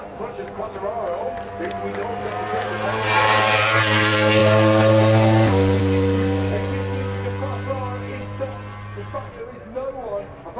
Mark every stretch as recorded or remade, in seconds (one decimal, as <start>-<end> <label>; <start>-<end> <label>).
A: 0.0-10.6 recorded